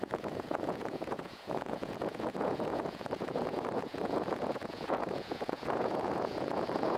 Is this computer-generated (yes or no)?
yes